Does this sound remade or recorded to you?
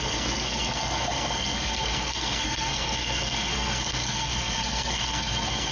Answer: remade